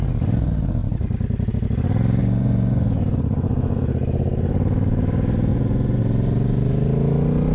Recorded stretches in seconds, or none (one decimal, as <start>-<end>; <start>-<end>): 0.0-2.2; 3.8-5.5; 6.0-7.5